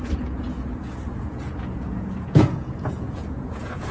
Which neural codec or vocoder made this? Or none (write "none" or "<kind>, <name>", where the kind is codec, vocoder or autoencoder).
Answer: vocoder, Vocos